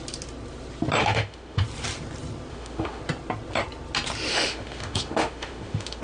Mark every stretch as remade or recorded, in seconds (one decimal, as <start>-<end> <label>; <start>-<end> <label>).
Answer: 0.0-1.0 recorded; 1.0-1.6 remade; 1.6-2.5 recorded; 2.5-3.0 remade; 3.0-4.3 recorded; 4.3-6.0 remade